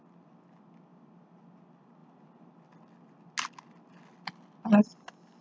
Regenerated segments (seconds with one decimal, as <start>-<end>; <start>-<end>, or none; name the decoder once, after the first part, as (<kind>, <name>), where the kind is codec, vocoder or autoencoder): none